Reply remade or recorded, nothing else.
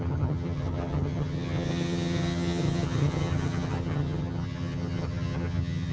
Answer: remade